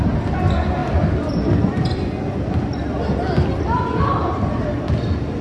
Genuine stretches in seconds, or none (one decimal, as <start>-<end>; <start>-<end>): 0.0-5.4